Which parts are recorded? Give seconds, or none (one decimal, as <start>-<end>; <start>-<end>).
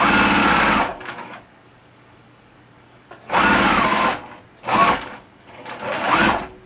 0.0-0.4; 4.0-4.7; 5.7-6.7